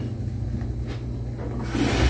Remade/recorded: recorded